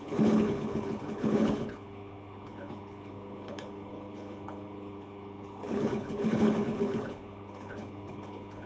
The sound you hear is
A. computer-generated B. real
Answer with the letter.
A